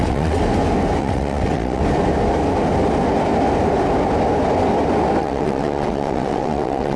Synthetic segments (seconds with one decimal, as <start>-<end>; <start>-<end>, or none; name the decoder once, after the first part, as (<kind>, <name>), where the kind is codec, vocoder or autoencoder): 0.0-0.4 (vocoder, WaveNeXt); 1.0-1.8; 5.2-7.0